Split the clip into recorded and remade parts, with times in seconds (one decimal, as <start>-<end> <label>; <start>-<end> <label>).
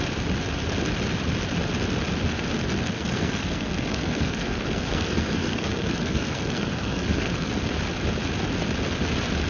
0.0-2.8 recorded; 2.8-7.5 remade; 7.5-9.5 recorded